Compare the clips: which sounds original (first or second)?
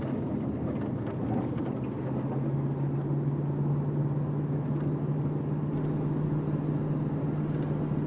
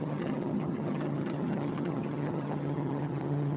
first